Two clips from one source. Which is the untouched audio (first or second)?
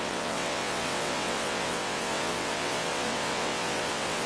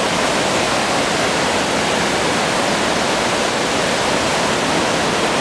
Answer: second